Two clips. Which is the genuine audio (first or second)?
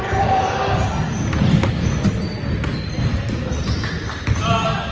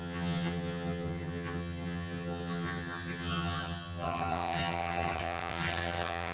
first